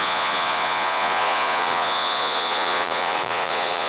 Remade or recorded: remade